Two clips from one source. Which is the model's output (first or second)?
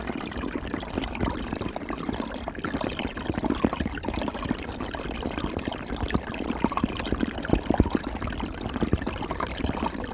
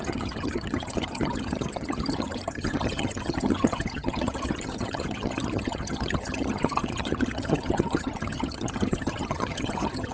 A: second